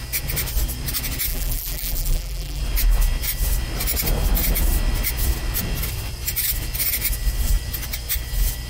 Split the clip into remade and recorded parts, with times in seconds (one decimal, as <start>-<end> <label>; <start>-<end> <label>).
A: 0.0-1.3 recorded; 1.3-2.6 remade; 2.6-8.7 recorded